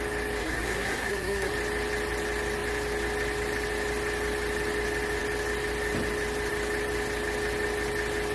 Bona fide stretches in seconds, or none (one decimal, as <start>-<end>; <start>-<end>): 0.0-0.4; 1.5-8.3